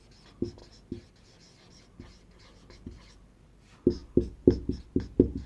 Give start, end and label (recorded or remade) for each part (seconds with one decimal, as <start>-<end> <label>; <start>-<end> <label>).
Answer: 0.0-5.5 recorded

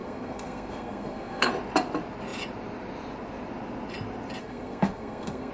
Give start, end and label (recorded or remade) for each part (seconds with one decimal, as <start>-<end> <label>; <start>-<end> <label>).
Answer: 0.0-1.5 remade; 1.5-4.4 recorded; 4.4-5.5 remade

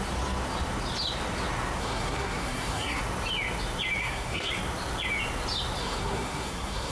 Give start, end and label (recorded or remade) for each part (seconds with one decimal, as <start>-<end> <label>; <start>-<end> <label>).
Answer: 0.0-1.8 recorded; 1.8-3.0 remade; 3.0-4.0 recorded; 4.0-4.5 remade; 4.5-5.8 recorded; 5.8-6.9 remade

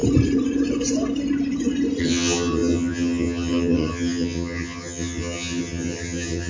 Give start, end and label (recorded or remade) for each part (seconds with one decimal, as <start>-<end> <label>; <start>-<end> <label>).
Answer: 0.0-2.0 recorded; 2.0-6.5 remade

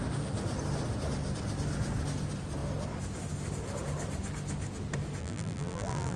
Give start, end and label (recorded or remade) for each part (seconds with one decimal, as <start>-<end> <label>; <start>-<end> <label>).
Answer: 0.0-5.2 recorded; 5.2-6.2 remade

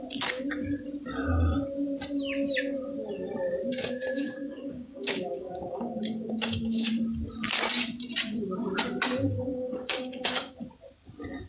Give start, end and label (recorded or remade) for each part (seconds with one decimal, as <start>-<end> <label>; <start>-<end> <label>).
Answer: 0.0-3.7 recorded; 3.7-6.9 remade; 6.9-9.2 recorded; 9.2-10.6 remade; 10.6-11.5 recorded

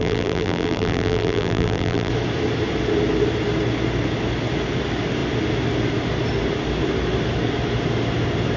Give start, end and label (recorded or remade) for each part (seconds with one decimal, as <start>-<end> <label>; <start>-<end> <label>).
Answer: 0.0-2.1 remade; 2.1-8.6 recorded